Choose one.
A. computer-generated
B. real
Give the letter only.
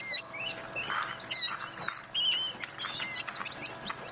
B